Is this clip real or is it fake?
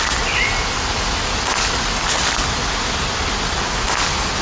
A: real